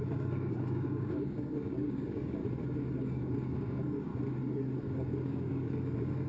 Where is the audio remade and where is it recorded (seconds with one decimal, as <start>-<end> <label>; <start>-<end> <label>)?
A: 0.0-2.4 remade; 2.4-3.0 recorded; 3.0-4.1 remade; 4.1-4.9 recorded; 4.9-6.3 remade